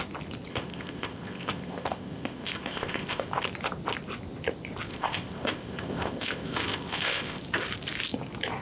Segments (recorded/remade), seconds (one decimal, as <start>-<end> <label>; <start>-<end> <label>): 0.0-0.5 recorded; 0.5-3.3 remade; 3.3-4.9 recorded; 4.9-7.4 remade; 7.4-8.6 recorded